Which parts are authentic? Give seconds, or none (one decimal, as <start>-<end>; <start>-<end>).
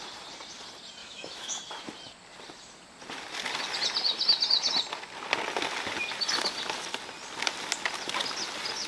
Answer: 0.0-1.0; 1.6-8.9